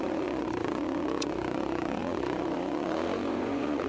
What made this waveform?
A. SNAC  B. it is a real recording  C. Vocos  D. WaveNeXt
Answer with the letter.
C